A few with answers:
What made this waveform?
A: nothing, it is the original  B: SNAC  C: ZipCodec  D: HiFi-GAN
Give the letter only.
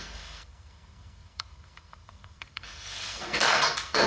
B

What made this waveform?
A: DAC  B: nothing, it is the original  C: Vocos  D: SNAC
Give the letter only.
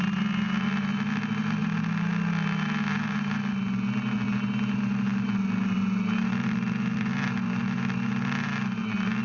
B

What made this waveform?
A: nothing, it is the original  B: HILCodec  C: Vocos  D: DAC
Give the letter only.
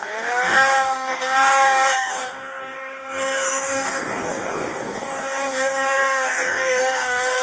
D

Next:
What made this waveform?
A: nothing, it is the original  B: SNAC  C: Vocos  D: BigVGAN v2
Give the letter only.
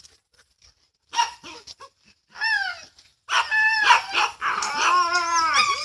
D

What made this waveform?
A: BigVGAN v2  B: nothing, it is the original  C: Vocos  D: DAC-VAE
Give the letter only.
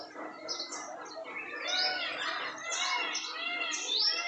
B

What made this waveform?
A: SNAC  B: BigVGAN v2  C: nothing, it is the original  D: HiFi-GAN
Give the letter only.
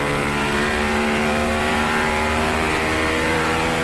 B